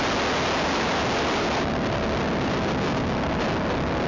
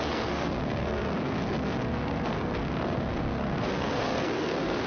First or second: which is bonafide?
first